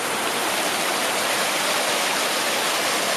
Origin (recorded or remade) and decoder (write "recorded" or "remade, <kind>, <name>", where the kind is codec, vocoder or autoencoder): recorded